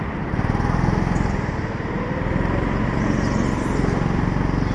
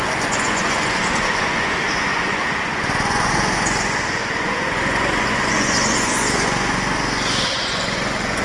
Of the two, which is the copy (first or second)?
second